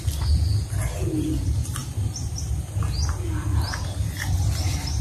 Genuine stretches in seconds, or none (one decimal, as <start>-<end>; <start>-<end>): 1.8-5.0